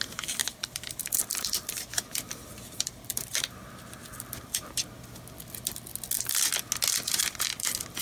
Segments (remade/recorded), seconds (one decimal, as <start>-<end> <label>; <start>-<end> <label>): 0.0-0.4 recorded; 0.4-4.9 remade; 4.9-8.0 recorded